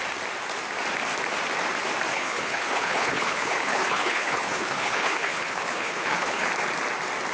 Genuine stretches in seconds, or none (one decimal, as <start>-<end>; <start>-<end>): 0.0-2.1; 6.5-7.3